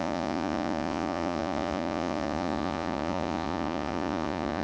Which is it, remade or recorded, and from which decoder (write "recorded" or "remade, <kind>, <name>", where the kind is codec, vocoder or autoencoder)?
remade, vocoder, Vocos